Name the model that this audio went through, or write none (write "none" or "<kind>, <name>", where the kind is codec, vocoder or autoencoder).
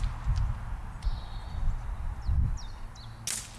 none